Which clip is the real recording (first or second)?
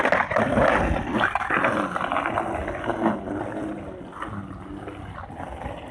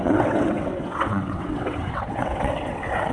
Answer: first